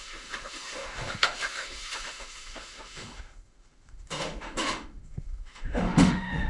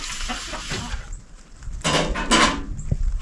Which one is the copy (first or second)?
first